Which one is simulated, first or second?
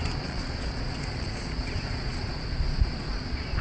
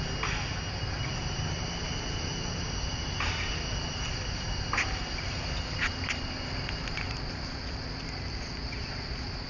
first